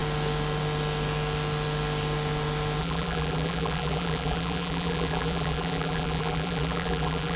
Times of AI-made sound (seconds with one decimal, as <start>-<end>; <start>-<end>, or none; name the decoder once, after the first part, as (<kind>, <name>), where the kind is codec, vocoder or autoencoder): 2.8-7.4 (vocoder, BigVGAN v2)